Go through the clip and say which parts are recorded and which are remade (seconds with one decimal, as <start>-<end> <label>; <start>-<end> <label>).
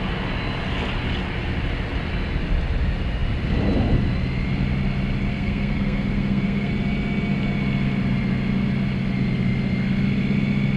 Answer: 0.0-5.3 recorded; 5.3-6.7 remade; 6.7-10.8 recorded